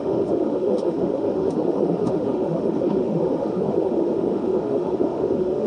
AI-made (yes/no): yes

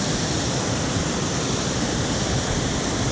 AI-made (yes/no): no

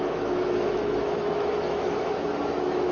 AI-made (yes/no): yes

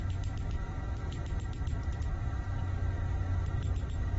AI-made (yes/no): no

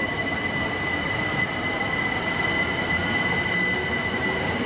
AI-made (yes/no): no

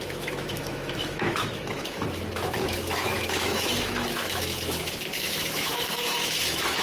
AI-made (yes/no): yes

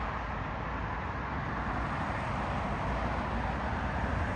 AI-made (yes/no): no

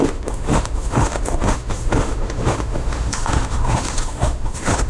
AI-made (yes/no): yes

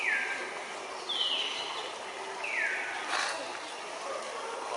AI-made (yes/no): no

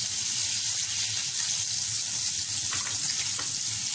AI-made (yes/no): no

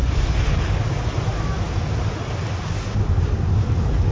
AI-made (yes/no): no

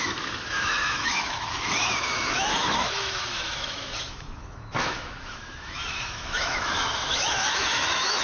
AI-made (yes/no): yes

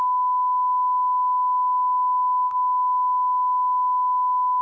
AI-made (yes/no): yes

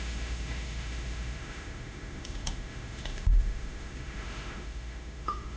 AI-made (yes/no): yes